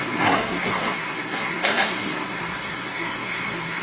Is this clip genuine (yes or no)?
no